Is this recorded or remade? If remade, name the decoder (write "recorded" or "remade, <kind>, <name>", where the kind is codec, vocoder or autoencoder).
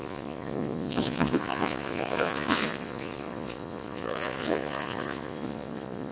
remade, vocoder, Vocos